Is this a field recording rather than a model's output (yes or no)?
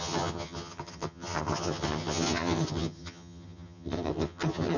no